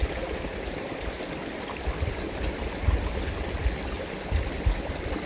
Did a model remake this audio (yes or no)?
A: no